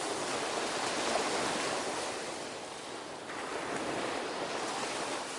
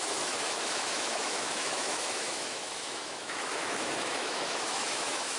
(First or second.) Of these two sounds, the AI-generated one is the second